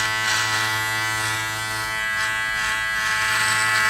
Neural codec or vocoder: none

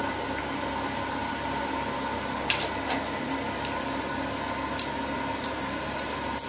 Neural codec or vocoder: none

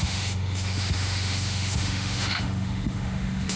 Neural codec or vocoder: autoencoder, DAC-VAE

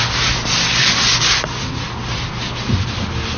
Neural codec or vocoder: none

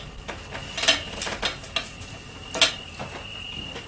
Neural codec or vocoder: none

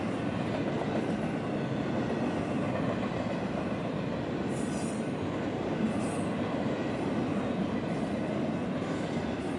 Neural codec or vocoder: none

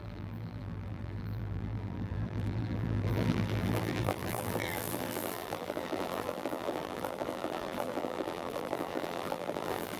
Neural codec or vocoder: vocoder, BigVGAN v2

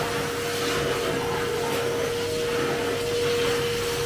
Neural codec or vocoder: none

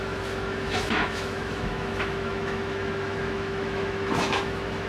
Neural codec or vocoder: autoencoder, DAC-VAE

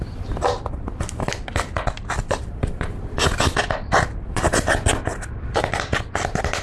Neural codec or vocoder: vocoder, BigVGAN v2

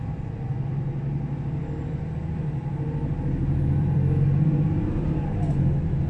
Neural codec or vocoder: none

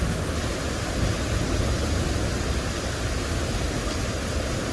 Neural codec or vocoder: none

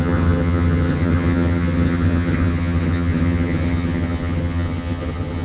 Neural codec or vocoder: vocoder, HiFi-GAN